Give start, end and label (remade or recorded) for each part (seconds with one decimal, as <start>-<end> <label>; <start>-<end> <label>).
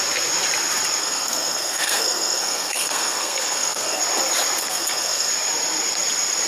0.0-1.0 recorded; 1.0-4.0 remade; 4.0-4.6 recorded; 4.6-5.3 remade; 5.3-6.5 recorded